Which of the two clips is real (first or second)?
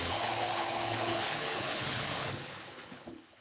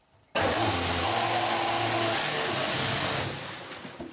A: second